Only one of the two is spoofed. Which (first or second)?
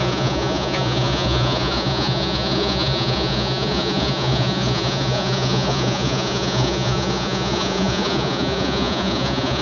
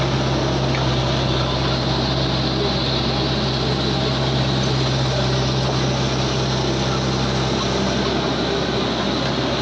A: first